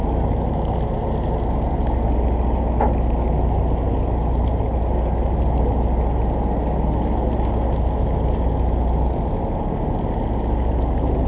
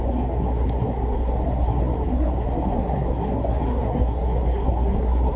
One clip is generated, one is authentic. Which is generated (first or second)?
second